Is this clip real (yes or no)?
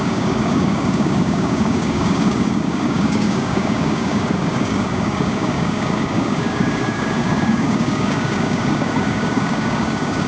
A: no